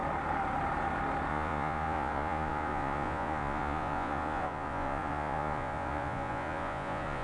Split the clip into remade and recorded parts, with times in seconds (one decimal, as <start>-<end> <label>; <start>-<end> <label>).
0.0-1.3 recorded; 1.3-7.2 remade